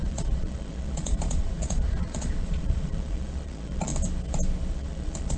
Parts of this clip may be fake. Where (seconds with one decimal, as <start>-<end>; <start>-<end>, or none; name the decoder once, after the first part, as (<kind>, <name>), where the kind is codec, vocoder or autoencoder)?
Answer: 0.0-3.9 (vocoder, Vocos); 4.7-5.4